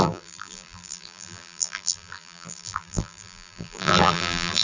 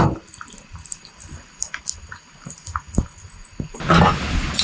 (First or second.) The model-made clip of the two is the first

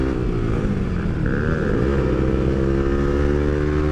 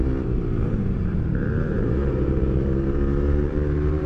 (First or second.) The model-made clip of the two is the second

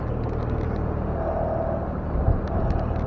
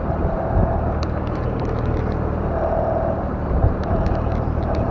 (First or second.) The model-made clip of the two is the second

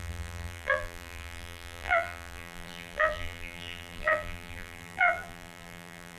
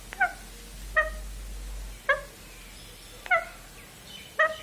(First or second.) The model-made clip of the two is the first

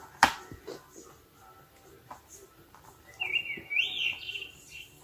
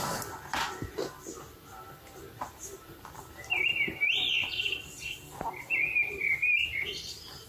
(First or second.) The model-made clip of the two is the second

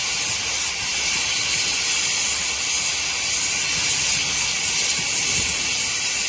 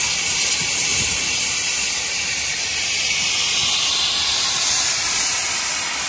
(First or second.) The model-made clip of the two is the second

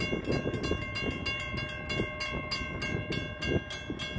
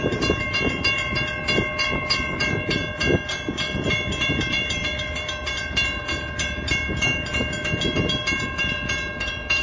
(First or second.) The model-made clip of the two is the second